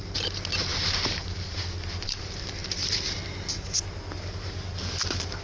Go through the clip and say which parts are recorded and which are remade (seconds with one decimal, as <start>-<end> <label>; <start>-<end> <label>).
0.0-0.7 recorded; 0.7-1.6 remade; 1.6-5.4 recorded